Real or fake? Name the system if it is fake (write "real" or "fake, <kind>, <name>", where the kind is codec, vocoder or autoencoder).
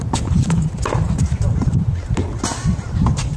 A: real